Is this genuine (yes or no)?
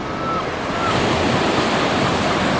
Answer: yes